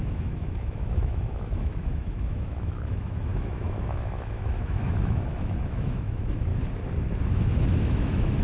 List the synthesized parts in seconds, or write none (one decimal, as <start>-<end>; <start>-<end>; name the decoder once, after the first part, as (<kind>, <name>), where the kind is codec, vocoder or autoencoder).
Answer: 0.0-6.5 (autoencoder, DAC-VAE); 7.2-8.4